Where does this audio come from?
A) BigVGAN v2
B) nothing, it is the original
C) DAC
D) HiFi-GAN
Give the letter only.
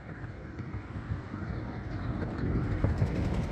C